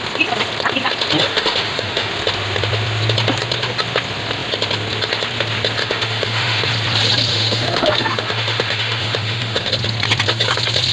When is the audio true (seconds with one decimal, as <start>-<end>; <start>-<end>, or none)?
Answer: 0.0-1.3; 2.1-5.8; 6.7-7.3; 9.7-10.9